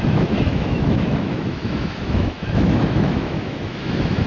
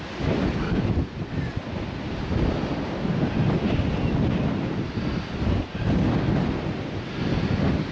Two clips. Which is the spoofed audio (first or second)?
first